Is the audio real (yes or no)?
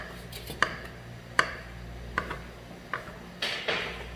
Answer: no